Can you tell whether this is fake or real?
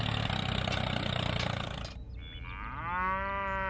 real